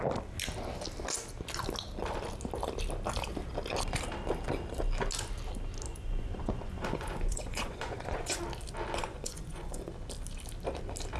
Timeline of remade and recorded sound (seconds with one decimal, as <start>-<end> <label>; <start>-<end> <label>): 0.0-5.9 recorded; 5.9-8.4 remade; 8.4-9.0 recorded; 9.0-9.9 remade; 9.9-11.2 recorded

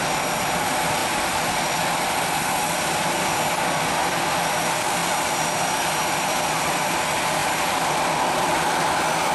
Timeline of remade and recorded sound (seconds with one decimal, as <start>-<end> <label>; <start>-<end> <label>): 0.0-1.0 recorded; 1.0-2.0 remade; 2.0-7.4 recorded; 7.4-8.9 remade; 8.9-9.3 recorded

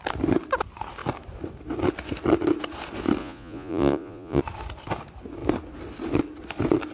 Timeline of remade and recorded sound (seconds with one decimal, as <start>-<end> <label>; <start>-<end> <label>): 0.0-3.2 recorded; 3.2-4.4 remade; 4.4-6.9 recorded

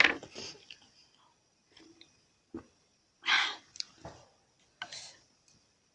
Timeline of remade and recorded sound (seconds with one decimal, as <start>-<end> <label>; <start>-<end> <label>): 0.0-5.9 recorded

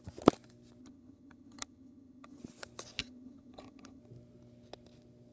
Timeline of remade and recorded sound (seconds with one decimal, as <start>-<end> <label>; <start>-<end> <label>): 0.0-0.8 recorded; 0.8-2.4 remade; 2.4-3.0 recorded; 3.0-4.0 remade; 4.0-5.3 recorded

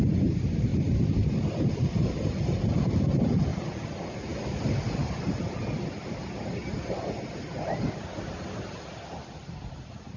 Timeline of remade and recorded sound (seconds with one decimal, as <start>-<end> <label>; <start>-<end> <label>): 0.0-3.5 recorded; 3.5-4.3 remade; 4.3-10.2 recorded

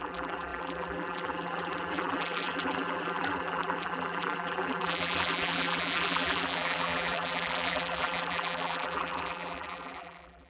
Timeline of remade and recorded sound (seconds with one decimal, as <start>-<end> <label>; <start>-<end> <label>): 0.0-10.5 remade